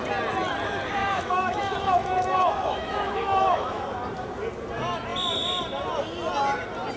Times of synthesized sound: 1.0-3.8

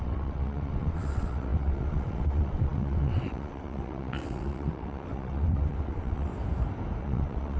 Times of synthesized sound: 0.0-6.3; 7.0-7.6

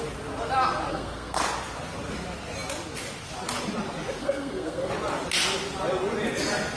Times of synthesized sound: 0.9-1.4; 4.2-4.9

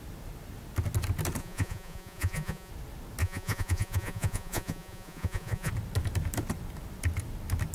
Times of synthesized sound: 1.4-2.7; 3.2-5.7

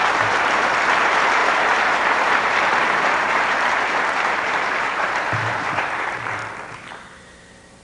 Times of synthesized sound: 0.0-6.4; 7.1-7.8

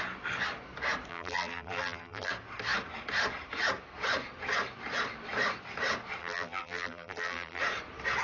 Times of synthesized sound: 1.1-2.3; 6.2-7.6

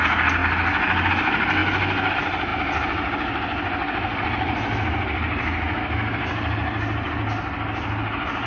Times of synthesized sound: none